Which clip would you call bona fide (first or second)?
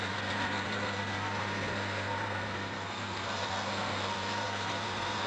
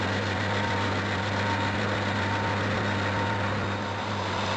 second